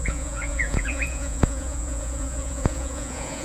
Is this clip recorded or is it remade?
remade